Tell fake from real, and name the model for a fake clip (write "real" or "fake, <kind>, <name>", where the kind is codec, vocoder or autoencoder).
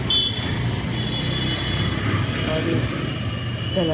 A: real